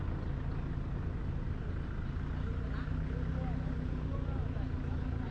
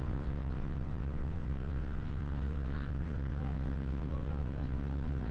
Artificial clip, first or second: second